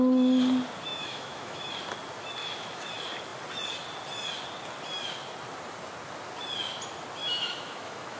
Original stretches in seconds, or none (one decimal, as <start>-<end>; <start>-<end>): 0.0-0.9; 1.7-2.4; 2.9-7.2